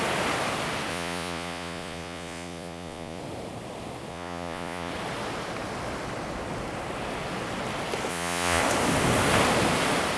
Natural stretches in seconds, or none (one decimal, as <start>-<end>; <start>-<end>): 0.0-0.9; 3.2-4.1; 4.9-8.1; 8.6-10.2